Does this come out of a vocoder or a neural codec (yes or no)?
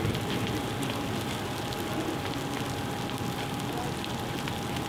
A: no